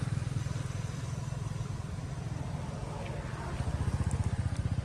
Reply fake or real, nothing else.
real